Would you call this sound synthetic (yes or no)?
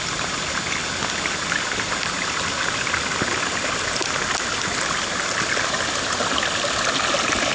no